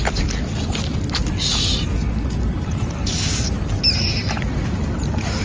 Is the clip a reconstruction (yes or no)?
no